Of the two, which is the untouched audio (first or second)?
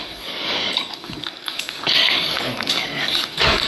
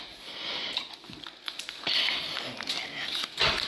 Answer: second